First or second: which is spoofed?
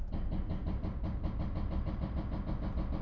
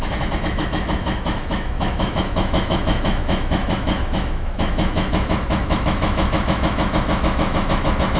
second